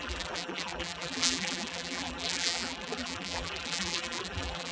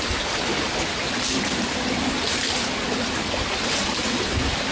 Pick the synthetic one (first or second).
first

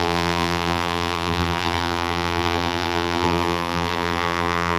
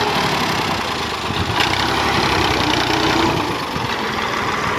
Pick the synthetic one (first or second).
first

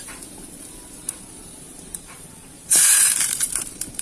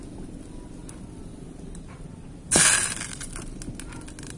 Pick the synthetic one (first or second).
first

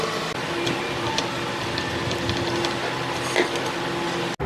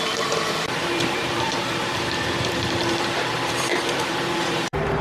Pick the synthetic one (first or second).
second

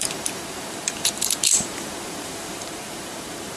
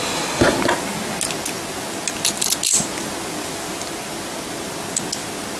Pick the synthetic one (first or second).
first